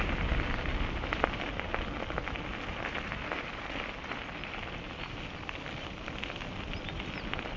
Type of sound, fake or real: real